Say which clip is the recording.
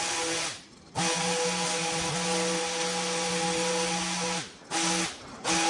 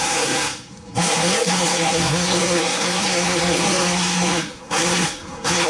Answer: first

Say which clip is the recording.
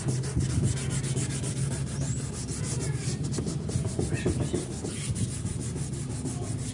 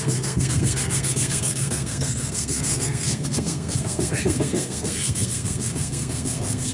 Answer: first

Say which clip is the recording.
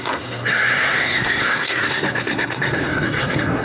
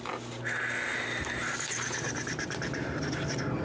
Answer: second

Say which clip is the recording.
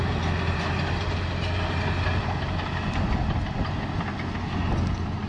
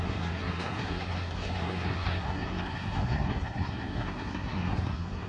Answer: first